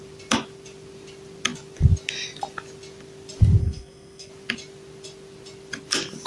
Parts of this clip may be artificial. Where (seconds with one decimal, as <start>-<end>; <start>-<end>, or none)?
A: 3.6-4.3